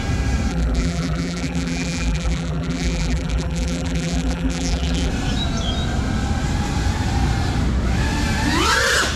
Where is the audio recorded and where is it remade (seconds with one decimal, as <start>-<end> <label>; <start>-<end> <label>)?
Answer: 0.0-0.5 recorded; 0.5-5.1 remade; 5.1-9.2 recorded